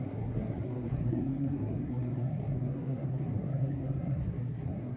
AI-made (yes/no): yes